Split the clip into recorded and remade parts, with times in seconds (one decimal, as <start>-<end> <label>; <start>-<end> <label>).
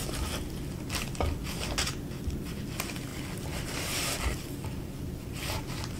0.0-6.0 recorded